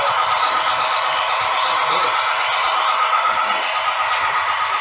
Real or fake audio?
real